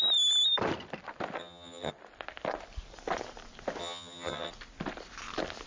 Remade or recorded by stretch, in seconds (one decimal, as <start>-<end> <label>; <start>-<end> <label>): 0.0-1.4 recorded; 1.4-1.9 remade; 1.9-3.8 recorded; 3.8-4.5 remade; 4.5-5.7 recorded